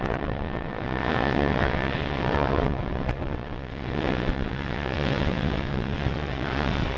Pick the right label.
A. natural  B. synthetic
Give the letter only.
B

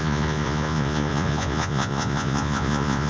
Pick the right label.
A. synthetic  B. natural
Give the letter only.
A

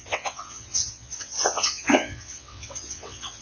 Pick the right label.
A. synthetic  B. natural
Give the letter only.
A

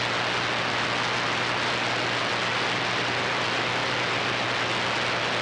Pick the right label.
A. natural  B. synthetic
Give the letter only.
A